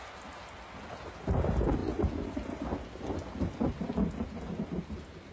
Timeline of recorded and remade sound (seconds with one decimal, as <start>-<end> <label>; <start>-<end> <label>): 0.0-5.3 recorded